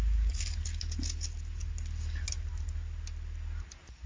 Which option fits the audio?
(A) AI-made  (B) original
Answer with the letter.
B